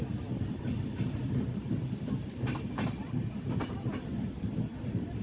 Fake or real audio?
real